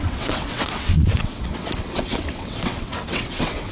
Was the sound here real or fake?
fake